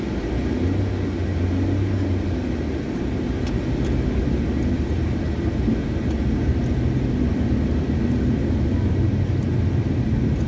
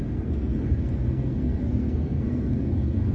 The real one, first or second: first